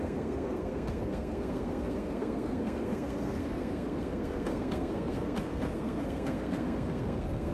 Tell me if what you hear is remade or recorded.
remade